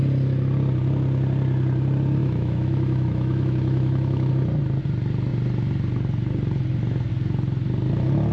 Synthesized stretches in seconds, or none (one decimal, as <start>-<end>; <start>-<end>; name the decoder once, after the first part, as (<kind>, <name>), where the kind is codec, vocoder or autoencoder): 2.2-4.3 (autoencoder, DAC-VAE)